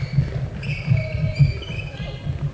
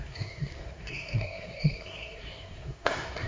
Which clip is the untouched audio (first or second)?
first